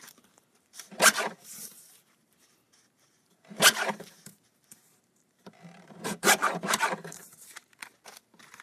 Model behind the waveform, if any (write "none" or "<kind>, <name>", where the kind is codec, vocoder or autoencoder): vocoder, BigVGAN v2